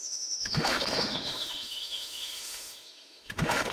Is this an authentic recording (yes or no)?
no